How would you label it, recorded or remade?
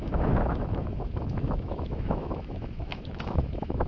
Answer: remade